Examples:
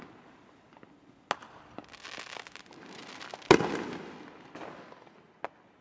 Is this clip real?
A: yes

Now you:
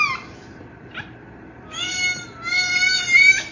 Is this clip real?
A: yes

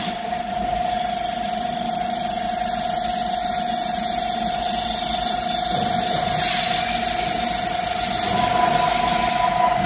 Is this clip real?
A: yes